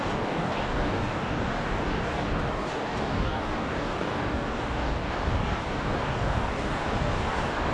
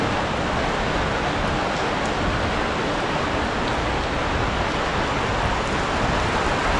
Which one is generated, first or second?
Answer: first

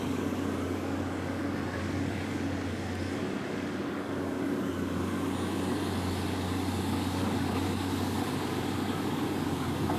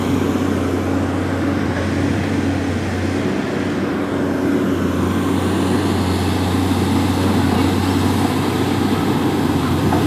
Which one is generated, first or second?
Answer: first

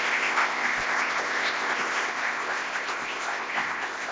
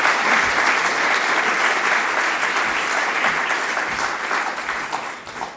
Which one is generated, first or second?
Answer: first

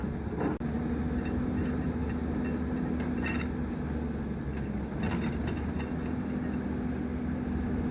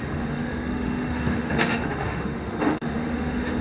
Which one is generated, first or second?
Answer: second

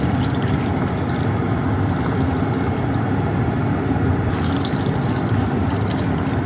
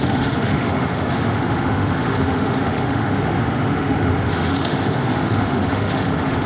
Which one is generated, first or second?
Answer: second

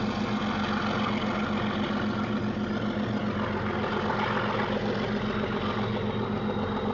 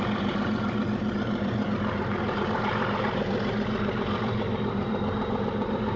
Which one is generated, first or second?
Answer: second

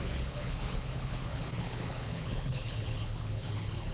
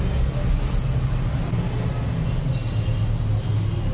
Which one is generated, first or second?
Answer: first